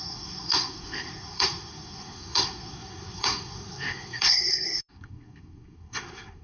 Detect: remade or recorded remade